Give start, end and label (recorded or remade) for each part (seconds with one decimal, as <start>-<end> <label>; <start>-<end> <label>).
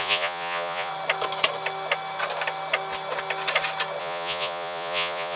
0.0-0.9 remade; 0.9-4.0 recorded; 4.0-5.4 remade